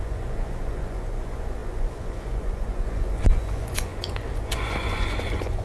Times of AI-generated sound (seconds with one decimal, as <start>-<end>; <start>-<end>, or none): 0.0-5.6